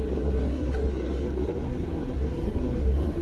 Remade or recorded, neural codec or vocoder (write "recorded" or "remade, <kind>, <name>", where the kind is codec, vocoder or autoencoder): remade, codec, SNAC